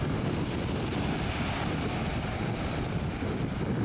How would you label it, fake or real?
real